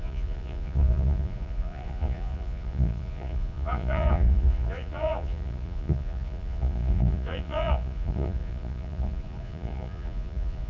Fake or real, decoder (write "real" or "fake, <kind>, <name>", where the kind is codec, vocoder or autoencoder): fake, vocoder, Vocos